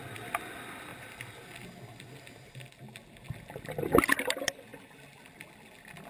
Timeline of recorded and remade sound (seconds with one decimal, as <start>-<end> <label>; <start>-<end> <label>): 0.0-6.1 recorded